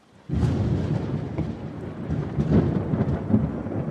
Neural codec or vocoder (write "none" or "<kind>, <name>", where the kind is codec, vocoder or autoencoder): none